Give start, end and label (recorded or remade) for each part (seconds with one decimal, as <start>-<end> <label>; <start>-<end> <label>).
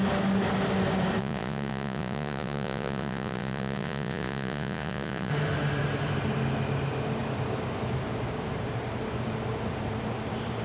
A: 0.0-1.2 recorded; 1.2-5.3 remade; 5.3-10.6 recorded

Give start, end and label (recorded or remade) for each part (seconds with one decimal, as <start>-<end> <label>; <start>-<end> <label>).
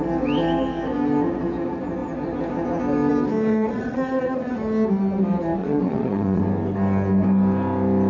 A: 0.0-3.5 recorded; 3.5-4.5 remade; 4.5-5.6 recorded; 5.6-6.4 remade; 6.4-8.1 recorded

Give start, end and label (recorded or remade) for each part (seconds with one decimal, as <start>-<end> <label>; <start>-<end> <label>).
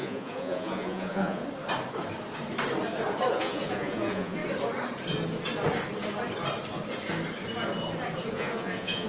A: 0.0-1.4 remade; 1.4-3.3 recorded; 3.3-4.4 remade; 4.4-8.3 recorded; 8.3-9.1 remade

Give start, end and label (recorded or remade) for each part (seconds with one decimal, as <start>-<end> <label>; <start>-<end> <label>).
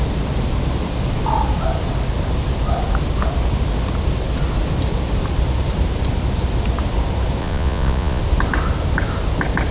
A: 0.0-7.4 recorded; 7.4-8.2 remade; 8.2-9.7 recorded